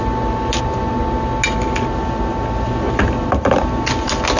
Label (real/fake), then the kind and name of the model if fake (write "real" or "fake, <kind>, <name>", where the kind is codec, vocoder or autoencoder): real